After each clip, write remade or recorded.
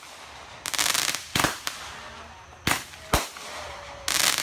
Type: recorded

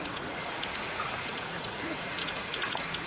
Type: remade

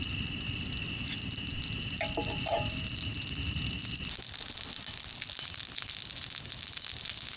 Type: recorded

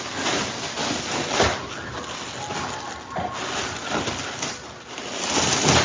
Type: recorded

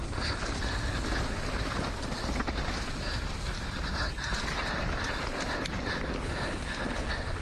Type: recorded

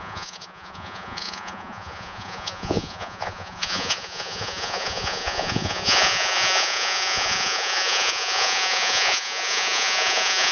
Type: remade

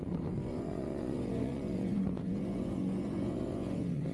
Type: remade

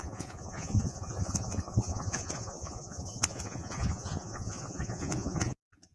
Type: remade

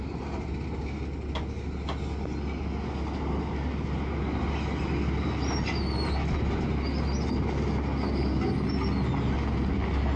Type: recorded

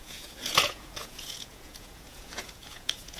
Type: remade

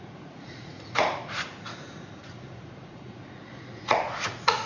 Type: remade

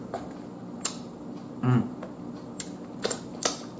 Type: recorded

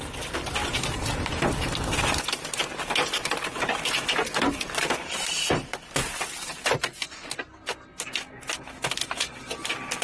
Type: recorded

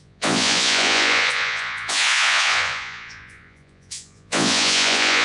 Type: remade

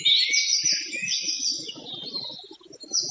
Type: recorded